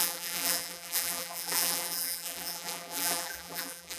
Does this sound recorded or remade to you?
remade